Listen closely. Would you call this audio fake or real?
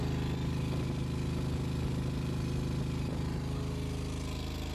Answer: real